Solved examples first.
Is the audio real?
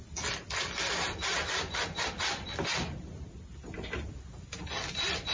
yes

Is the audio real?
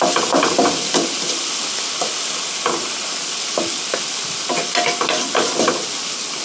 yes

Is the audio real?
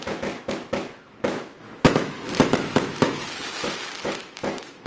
no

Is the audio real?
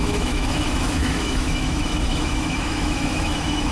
no